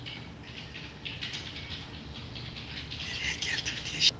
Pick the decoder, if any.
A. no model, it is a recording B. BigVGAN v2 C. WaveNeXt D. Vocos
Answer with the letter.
A